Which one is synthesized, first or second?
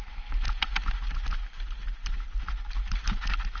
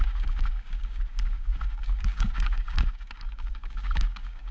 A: second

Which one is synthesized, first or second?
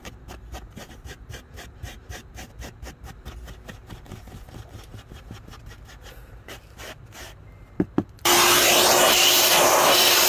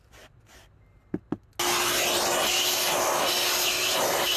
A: first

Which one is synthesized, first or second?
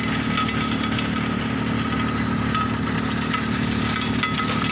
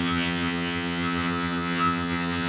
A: second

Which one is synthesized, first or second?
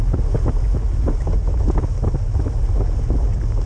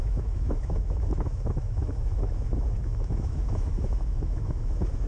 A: second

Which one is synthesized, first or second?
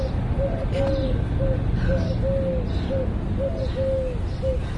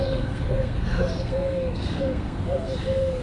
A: second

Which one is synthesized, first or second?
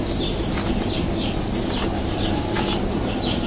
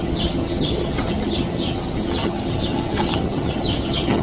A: second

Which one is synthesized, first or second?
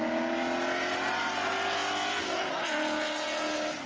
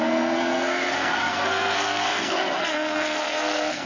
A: second